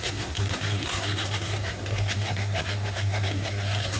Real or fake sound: fake